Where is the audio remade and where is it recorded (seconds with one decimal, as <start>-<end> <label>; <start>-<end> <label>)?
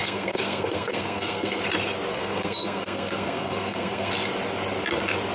0.0-1.6 remade; 1.6-2.1 recorded; 2.1-4.1 remade; 4.1-5.3 recorded